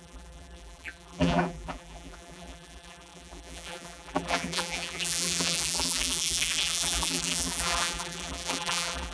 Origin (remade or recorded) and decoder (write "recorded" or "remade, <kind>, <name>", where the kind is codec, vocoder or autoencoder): remade, vocoder, BigVGAN v2